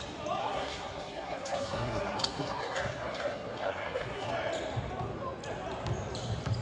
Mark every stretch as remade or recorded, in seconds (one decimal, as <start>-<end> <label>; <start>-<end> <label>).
0.0-0.4 recorded; 0.4-4.3 remade; 4.3-6.6 recorded